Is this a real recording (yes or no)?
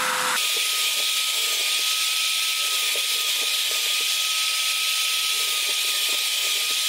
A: yes